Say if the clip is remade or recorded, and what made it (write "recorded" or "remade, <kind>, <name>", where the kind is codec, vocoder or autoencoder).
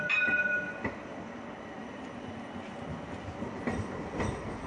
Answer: recorded